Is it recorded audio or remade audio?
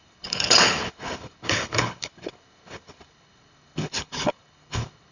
remade